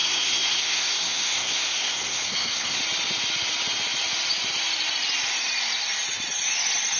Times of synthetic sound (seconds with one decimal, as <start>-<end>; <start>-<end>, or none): 0.0-2.8